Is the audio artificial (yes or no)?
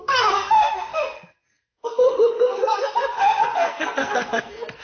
yes